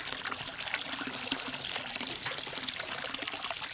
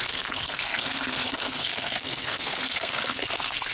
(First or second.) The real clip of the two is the first